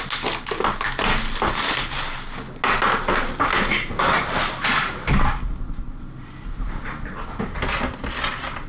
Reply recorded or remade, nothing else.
recorded